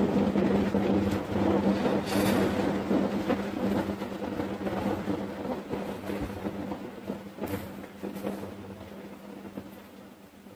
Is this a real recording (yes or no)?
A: yes